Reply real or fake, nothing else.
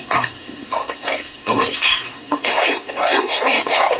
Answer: fake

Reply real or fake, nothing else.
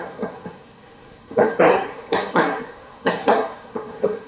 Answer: fake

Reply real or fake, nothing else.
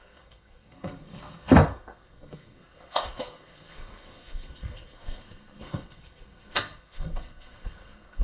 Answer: fake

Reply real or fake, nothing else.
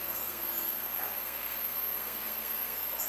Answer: fake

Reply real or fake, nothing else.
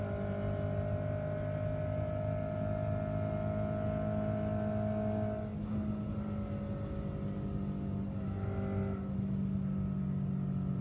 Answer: real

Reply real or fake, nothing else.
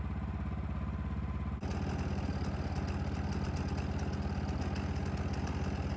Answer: real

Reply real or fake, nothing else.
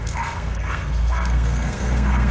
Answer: fake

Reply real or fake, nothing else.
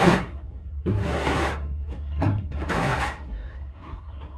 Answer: fake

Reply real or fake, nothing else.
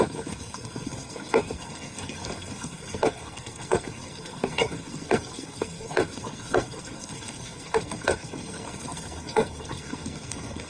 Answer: fake